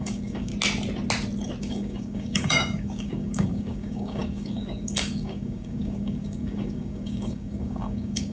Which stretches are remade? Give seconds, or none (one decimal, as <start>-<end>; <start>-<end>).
0.0-0.5; 1.6-8.3